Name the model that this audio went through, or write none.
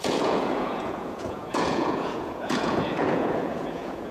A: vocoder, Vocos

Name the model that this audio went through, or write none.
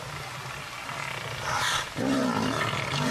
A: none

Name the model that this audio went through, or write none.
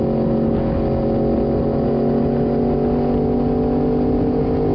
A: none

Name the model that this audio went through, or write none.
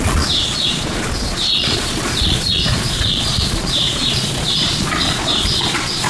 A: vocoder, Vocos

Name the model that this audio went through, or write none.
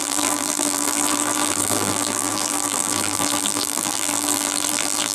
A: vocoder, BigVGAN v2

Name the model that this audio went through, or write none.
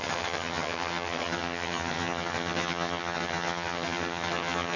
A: vocoder, HiFi-GAN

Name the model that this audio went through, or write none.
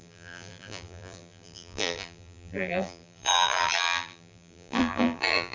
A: vocoder, BigVGAN v2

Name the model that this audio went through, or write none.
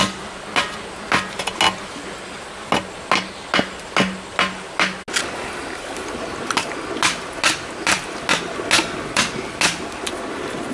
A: none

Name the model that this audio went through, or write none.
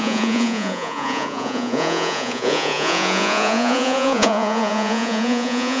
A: vocoder, Vocos